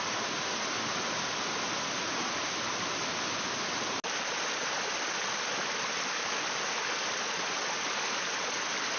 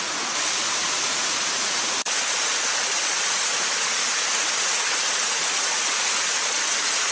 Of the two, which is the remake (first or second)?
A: second